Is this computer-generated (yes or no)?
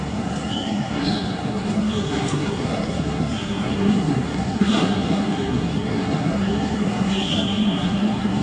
yes